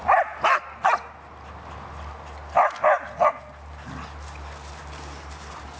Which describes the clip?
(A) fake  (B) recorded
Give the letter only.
B